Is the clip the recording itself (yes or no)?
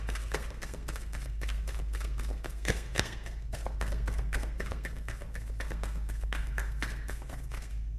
no